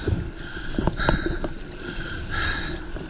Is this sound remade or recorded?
recorded